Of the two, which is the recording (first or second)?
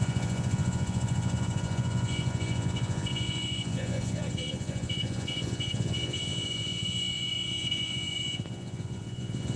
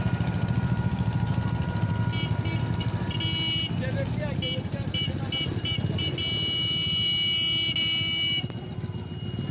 second